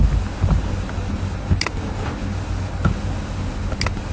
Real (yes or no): yes